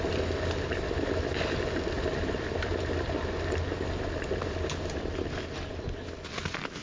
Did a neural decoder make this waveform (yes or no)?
no